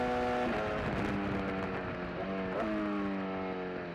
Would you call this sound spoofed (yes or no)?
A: no